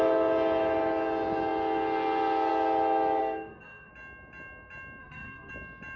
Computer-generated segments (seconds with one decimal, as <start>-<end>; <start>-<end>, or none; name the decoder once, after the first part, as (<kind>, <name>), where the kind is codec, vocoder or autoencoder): 3.2-3.9 (codec, SNAC); 5.0-5.5